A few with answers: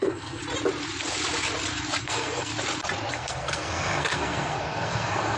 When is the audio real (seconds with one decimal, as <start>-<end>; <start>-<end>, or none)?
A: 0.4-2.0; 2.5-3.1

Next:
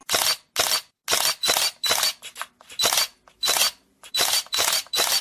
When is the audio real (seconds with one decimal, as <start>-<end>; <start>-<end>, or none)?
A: 0.0-0.6; 1.0-4.1

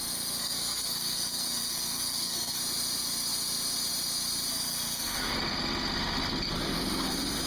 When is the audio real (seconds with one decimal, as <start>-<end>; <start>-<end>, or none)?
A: 0.0-0.4; 2.6-4.5; 5.2-7.5

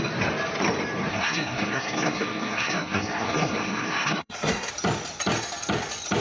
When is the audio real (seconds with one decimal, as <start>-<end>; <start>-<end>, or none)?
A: 0.0-1.1; 4.7-6.2

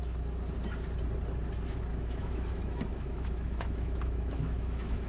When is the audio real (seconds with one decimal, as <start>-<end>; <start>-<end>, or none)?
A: 0.0-1.9

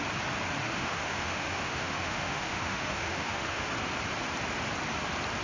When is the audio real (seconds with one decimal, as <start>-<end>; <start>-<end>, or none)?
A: 0.0-0.6; 3.7-5.4